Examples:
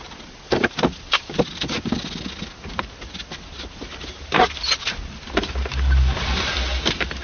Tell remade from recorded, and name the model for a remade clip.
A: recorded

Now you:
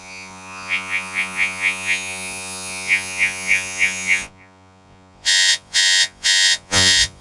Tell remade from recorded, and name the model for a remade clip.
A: remade, vocoder, Vocos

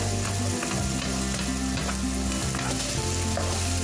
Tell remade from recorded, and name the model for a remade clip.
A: recorded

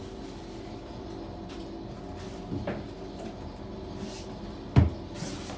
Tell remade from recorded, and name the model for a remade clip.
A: recorded